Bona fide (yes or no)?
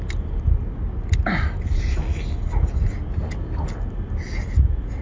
yes